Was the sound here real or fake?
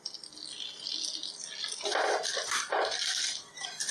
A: real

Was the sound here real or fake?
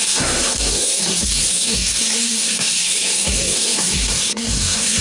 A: fake